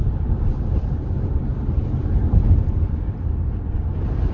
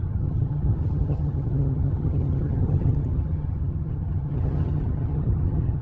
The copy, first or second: second